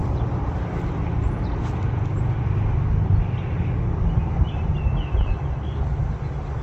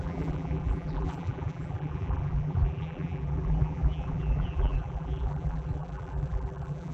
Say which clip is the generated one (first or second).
second